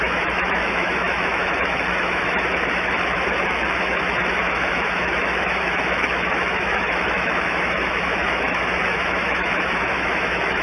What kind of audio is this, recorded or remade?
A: remade